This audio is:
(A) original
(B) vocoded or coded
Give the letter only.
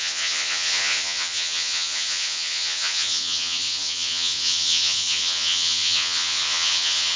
B